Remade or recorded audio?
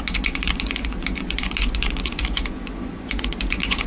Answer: remade